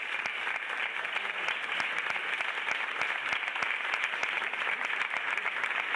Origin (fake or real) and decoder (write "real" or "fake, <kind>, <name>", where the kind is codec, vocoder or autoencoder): real